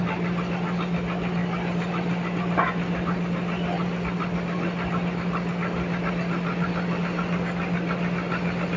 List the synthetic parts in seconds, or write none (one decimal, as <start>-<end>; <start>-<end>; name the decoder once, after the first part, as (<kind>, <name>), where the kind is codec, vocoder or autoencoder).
none